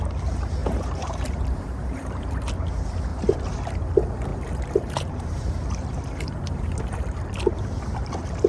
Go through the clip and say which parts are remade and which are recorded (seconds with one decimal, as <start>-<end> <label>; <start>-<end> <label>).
0.0-0.6 recorded; 0.6-2.5 remade; 2.5-3.1 recorded; 3.1-3.7 remade; 3.7-4.3 recorded; 4.3-7.2 remade; 7.2-8.5 recorded